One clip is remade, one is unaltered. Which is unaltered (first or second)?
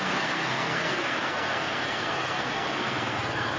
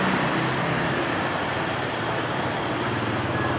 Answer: second